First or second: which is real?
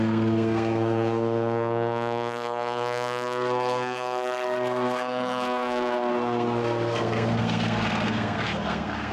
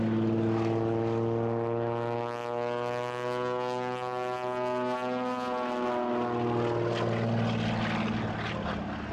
second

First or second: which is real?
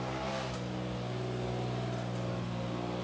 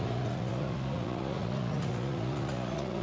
first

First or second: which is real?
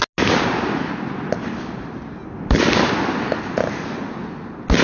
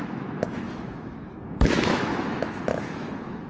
first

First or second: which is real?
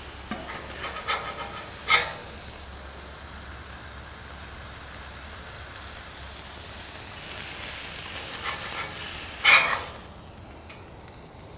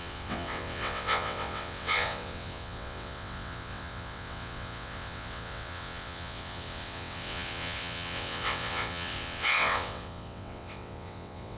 first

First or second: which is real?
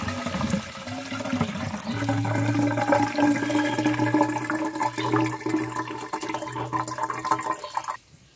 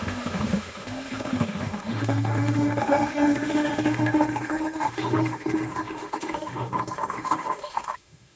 first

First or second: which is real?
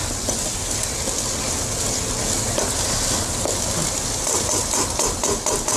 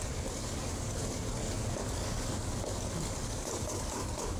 first